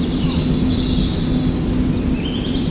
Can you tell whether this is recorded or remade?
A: recorded